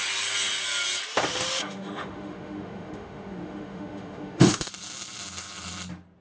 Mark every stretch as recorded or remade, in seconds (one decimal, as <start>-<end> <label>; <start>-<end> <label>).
0.0-1.6 recorded; 1.6-4.7 remade; 4.7-6.2 recorded